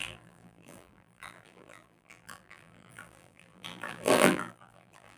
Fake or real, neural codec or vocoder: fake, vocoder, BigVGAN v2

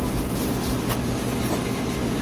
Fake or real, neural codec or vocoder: real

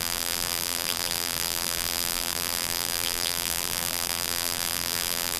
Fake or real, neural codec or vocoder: fake, vocoder, BigVGAN v2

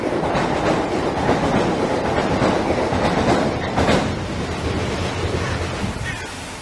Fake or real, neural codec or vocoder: real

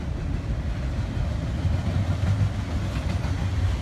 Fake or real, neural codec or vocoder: real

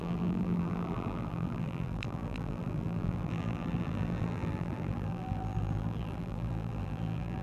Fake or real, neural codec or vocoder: fake, vocoder, BigVGAN v2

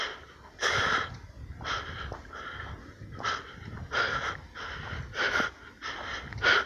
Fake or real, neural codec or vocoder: real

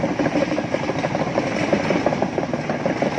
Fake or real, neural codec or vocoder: fake, vocoder, BigVGAN v2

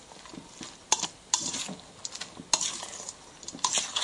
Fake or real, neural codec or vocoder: real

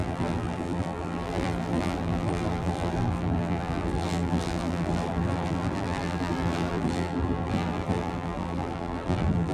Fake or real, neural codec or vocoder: fake, vocoder, BigVGAN v2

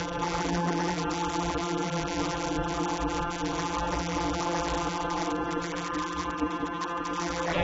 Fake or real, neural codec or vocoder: fake, vocoder, BigVGAN v2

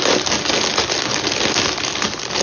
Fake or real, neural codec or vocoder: real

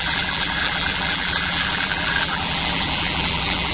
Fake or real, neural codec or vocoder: fake, vocoder, BigVGAN v2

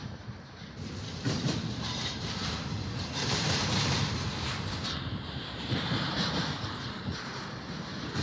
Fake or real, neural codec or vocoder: fake, vocoder, BigVGAN v2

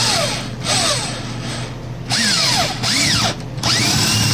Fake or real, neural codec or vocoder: real